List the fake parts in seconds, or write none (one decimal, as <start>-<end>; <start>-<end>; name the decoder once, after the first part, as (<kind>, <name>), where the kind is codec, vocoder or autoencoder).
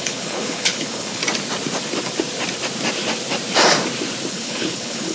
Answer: 0.0-1.2 (codec, HILCodec); 4.3-5.1